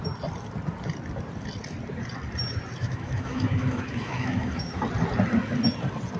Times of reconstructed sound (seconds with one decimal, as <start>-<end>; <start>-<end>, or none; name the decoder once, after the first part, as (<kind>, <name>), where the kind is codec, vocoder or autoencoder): 2.8-4.8 (autoencoder, DAC-VAE)